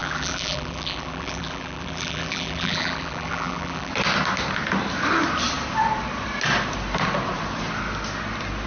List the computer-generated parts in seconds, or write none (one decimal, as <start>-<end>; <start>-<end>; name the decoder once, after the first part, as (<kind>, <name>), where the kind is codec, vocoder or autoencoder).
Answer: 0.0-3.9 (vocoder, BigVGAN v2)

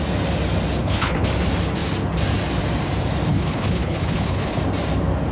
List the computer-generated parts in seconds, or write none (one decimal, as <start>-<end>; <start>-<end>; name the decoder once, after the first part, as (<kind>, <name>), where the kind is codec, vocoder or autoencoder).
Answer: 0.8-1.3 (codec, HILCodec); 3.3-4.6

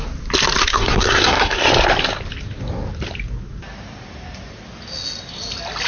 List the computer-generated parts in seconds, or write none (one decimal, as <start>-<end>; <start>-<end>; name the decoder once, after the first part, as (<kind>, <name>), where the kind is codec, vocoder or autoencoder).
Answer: 0.6-1.7 (codec, SNAC)

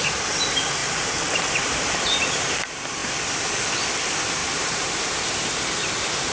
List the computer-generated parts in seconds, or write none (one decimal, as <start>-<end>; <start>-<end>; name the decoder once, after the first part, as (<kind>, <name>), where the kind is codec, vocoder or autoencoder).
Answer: 0.8-2.5 (vocoder, BigVGAN v2); 4.4-5.1

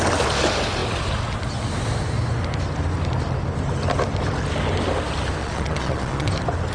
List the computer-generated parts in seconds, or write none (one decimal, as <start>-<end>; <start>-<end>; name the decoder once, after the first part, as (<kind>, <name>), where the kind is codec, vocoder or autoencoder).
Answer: 5.4-6.3 (vocoder, Vocos)

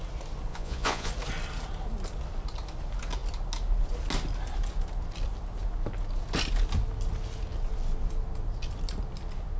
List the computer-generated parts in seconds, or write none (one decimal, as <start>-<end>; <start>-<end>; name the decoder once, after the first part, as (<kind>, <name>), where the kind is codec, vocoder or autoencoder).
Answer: 0.5-1.1 (vocoder, Vocos)